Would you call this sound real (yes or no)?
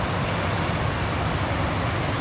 yes